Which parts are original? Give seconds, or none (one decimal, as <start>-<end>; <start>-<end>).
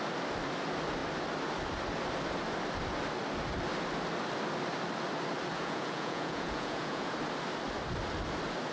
0.0-5.5; 7.1-8.7